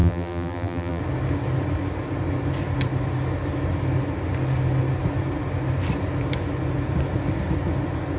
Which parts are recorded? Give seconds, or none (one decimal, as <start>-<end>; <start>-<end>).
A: 1.0-8.2